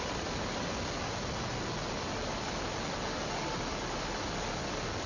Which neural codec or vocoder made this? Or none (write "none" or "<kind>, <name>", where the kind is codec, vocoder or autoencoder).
none